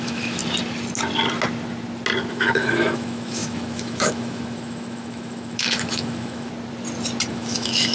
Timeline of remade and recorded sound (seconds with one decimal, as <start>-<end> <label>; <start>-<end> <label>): 0.0-0.4 remade; 0.4-2.3 recorded; 2.3-6.5 remade; 6.5-7.3 recorded; 7.3-7.9 remade